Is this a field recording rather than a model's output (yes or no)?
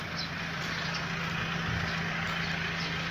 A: yes